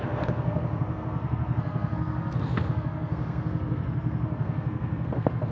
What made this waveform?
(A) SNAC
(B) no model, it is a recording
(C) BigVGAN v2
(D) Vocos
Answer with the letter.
A